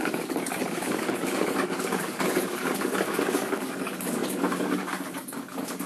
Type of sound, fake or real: fake